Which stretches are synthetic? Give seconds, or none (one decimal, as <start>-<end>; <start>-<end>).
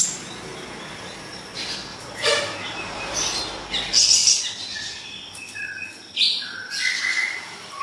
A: 1.9-3.4